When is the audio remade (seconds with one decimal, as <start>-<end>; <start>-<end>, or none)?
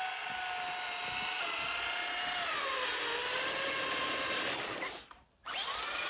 5.4-6.1